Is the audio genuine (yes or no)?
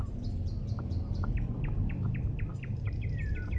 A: yes